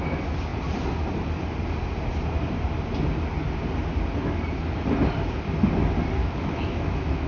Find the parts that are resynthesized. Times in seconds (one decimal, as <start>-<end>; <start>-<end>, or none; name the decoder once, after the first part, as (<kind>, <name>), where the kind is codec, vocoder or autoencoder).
6.2-7.3 (autoencoder, DAC-VAE)